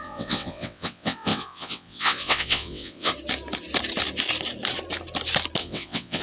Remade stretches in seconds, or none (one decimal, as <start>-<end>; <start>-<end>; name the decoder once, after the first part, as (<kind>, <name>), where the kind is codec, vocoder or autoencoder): 0.0-3.1 (vocoder, WaveNeXt); 5.6-6.2